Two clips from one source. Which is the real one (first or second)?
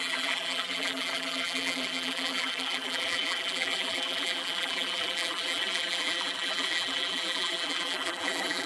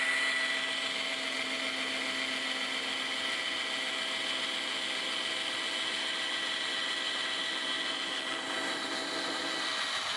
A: second